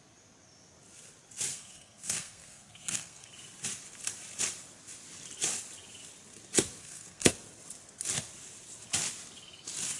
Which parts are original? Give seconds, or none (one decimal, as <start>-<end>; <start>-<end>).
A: 0.0-1.5; 3.3-6.8; 7.3-10.0